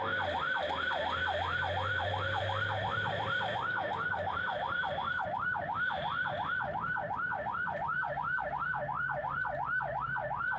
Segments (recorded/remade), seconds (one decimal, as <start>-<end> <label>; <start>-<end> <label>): 0.0-1.9 recorded; 1.9-6.3 remade; 6.3-10.6 recorded